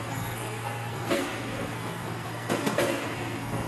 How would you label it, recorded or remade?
remade